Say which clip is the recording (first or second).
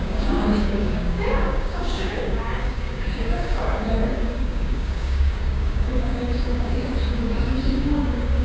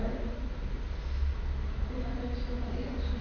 second